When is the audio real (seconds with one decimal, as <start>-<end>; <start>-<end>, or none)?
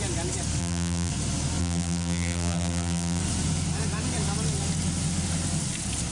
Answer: 0.0-0.6; 1.1-1.6; 3.2-6.1